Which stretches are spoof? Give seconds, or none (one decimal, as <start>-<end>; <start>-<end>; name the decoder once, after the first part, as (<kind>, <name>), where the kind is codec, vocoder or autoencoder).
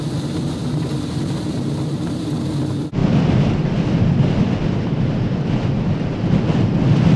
0.6-1.2 (vocoder, BigVGAN v2)